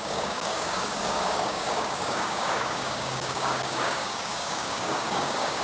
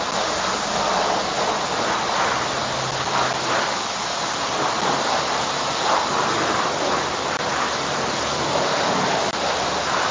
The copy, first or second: first